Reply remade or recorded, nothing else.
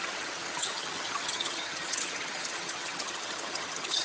remade